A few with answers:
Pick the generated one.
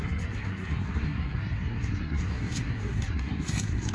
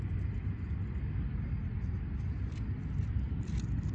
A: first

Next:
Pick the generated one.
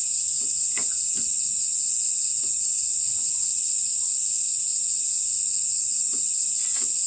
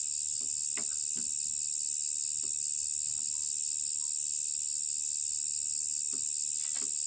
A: first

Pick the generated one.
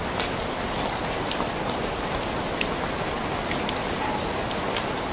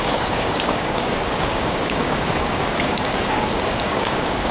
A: second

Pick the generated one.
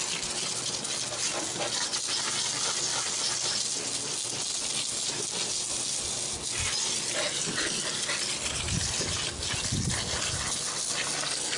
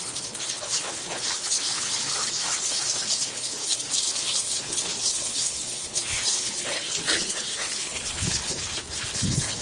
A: second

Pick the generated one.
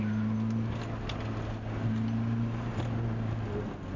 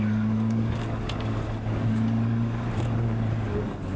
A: second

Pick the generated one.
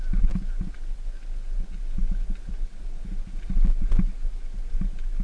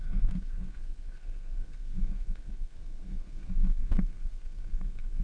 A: second